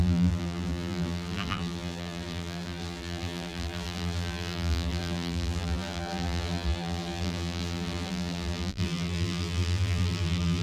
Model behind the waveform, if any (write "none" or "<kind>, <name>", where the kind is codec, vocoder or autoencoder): vocoder, BigVGAN v2